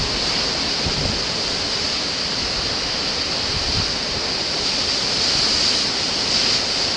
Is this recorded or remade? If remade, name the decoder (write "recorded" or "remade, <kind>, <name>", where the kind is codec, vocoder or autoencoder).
recorded